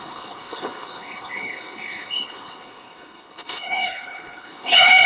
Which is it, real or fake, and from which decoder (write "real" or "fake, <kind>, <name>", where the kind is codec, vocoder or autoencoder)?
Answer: fake, codec, HILCodec